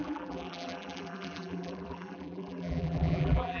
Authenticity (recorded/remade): remade